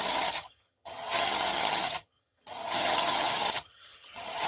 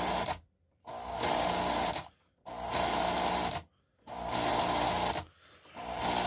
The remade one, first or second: first